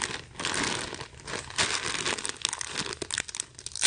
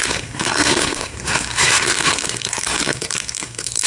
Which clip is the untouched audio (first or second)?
first